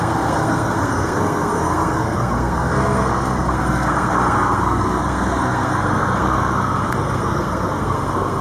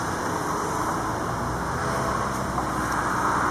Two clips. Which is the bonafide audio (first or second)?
second